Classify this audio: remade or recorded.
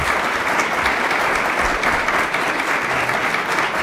recorded